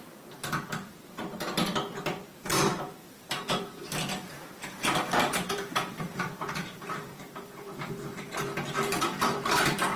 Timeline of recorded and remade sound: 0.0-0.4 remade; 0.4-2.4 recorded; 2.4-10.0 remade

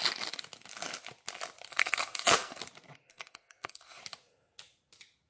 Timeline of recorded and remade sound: 0.0-1.7 recorded; 1.7-2.6 remade; 2.6-3.1 recorded; 3.1-4.0 remade; 4.0-5.3 recorded

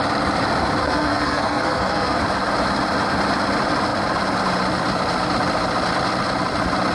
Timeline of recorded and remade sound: 0.0-0.8 recorded; 0.8-2.2 remade; 2.2-6.9 recorded

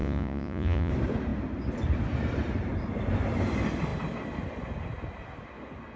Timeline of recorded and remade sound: 0.0-0.9 remade; 0.9-6.0 recorded